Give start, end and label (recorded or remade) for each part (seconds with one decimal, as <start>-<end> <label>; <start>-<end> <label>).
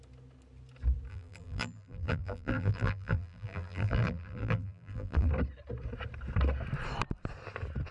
0.0-1.1 recorded; 1.1-5.3 remade; 5.3-7.9 recorded